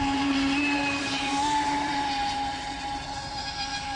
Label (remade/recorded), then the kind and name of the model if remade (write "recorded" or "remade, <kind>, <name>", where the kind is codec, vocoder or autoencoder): remade, vocoder, BigVGAN v2